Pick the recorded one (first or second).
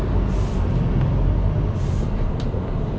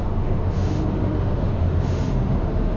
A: first